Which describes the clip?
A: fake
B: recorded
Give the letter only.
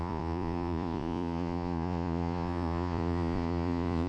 A